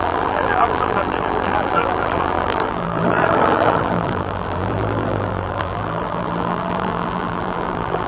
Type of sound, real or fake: fake